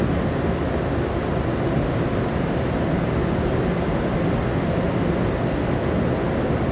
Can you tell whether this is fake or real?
real